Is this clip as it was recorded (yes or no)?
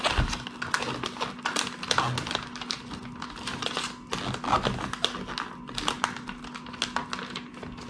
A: yes